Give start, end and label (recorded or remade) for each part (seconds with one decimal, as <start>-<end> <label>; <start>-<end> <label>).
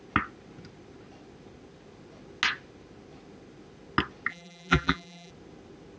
0.0-4.3 recorded; 4.3-5.3 remade; 5.3-6.0 recorded